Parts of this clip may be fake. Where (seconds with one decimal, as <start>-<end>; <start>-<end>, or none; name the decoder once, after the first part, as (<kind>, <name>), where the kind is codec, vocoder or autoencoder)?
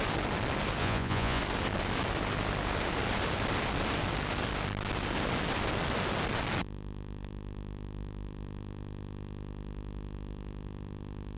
0.8-1.4 (vocoder, Vocos)